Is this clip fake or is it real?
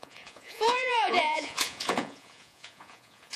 fake